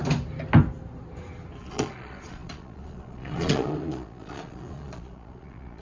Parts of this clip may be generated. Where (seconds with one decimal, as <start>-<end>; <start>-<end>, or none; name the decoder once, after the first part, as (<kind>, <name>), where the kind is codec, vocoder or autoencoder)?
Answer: 1.6-5.8 (vocoder, Vocos)